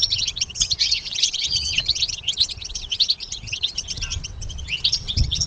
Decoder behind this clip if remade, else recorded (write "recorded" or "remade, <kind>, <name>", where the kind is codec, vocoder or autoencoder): remade, vocoder, WaveNeXt